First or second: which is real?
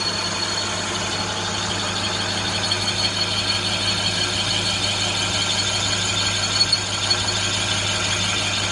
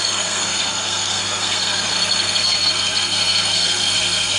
first